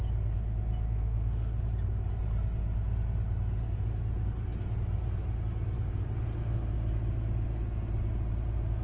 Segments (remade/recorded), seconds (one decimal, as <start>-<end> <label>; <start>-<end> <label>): 0.0-1.0 recorded; 1.0-1.6 remade; 1.6-8.8 recorded